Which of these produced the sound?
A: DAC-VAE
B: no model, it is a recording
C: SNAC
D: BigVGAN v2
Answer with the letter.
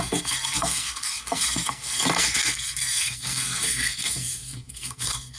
C